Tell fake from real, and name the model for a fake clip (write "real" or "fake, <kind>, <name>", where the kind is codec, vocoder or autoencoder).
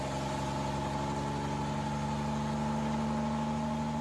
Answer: real